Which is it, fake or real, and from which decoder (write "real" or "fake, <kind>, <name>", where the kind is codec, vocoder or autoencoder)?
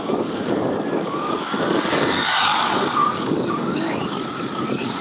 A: fake, codec, DAC